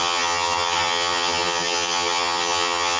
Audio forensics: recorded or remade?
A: remade